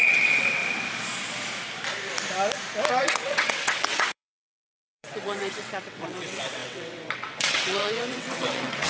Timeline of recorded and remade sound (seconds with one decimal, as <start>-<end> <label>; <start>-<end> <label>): 0.0-0.6 remade; 0.6-2.9 recorded; 2.9-8.9 remade